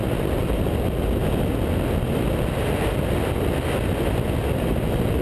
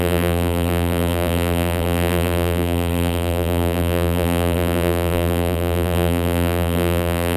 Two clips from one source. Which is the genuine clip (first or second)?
first